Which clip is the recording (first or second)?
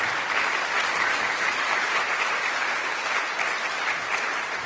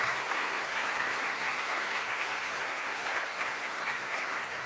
first